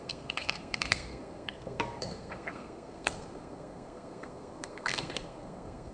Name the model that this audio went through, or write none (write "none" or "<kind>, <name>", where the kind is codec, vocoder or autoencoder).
codec, SNAC